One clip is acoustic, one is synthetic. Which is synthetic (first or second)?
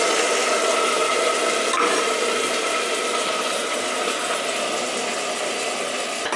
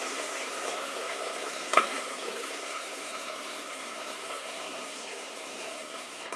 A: second